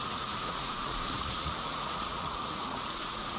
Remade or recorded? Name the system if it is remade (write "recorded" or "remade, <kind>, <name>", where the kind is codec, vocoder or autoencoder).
remade, vocoder, Vocos